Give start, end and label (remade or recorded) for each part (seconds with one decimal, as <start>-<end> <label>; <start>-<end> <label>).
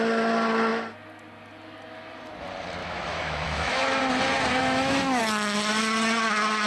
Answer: 0.0-2.8 recorded; 2.8-4.0 remade; 4.0-4.6 recorded; 4.6-5.2 remade; 5.2-6.7 recorded